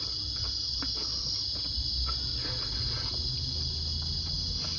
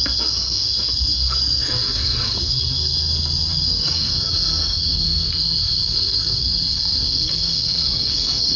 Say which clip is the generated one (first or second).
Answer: second